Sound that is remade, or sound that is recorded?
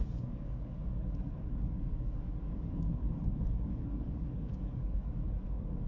remade